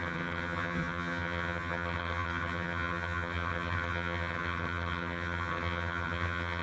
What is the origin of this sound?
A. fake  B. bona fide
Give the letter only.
A